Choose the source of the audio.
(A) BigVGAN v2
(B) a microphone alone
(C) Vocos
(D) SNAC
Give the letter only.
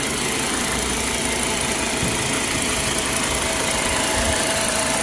B